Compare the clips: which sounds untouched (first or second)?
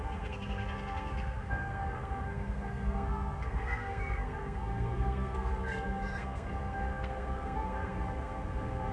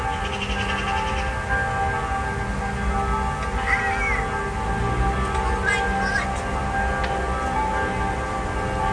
second